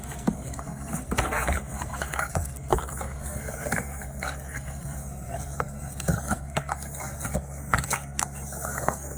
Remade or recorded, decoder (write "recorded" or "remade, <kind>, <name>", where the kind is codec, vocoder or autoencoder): remade, codec, SNAC